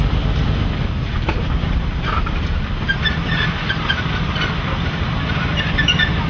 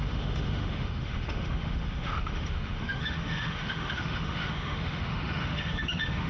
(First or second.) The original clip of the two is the first